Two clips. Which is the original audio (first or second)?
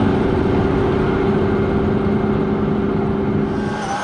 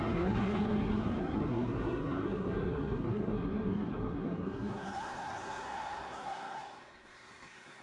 first